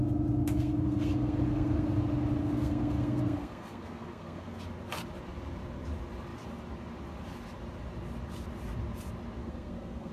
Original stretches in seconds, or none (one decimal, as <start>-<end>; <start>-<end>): 0.0-0.4; 2.0-2.4; 4.6-9.4